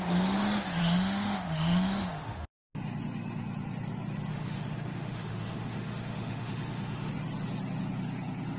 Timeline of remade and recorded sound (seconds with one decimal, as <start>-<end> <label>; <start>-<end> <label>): 0.0-0.8 recorded; 0.8-2.5 remade; 2.5-4.3 recorded; 4.3-7.1 remade; 7.1-8.6 recorded